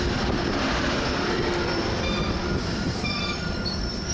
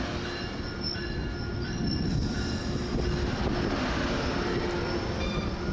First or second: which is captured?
second